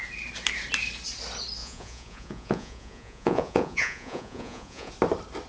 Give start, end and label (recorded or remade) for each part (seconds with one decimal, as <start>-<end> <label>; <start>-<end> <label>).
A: 0.0-1.6 recorded; 1.6-4.9 remade; 4.9-5.5 recorded